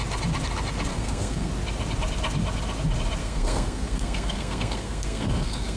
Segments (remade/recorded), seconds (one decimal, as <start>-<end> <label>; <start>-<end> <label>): 0.0-0.9 recorded; 0.9-1.5 remade; 1.5-3.2 recorded; 3.2-5.8 remade